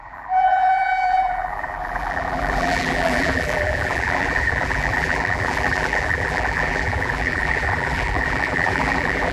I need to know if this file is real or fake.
fake